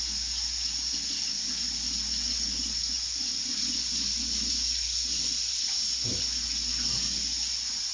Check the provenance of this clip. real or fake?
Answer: real